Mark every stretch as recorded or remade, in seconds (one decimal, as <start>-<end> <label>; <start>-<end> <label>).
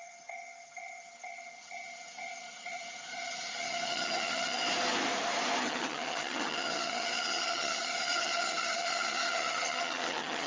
0.0-4.6 remade; 4.6-5.6 recorded; 5.6-10.5 remade